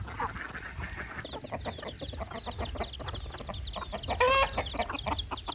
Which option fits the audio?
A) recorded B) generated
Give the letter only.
A